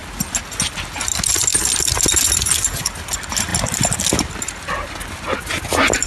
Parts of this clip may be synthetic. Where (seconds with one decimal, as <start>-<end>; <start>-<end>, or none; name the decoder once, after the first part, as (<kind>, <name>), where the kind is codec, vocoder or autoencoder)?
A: none